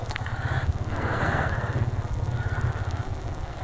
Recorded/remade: remade